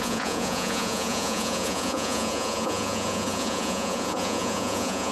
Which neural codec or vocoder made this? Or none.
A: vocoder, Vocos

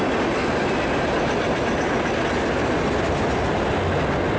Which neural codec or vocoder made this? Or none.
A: none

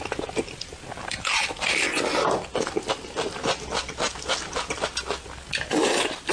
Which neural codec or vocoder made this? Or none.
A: none